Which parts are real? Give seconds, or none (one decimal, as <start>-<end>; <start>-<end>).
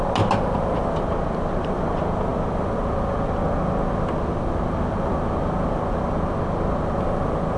0.0-7.6